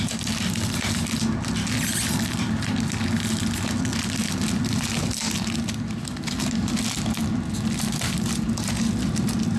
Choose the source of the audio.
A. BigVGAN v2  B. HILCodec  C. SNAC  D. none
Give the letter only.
D